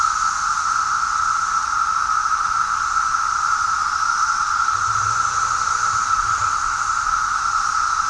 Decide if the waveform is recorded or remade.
recorded